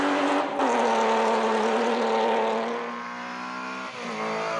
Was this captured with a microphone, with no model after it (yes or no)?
yes